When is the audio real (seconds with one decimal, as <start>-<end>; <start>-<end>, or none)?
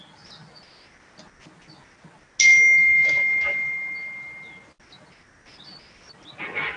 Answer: 0.0-6.8